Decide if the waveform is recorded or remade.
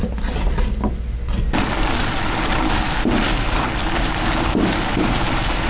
recorded